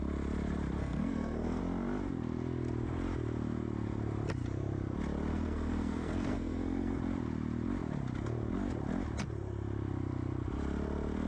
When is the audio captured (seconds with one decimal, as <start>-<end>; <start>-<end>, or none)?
0.0-0.8; 1.6-5.3; 7.0-11.3